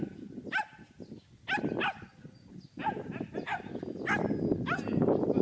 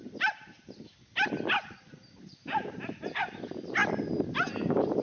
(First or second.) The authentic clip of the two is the first